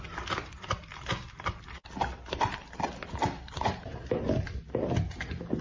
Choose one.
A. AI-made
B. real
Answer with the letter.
B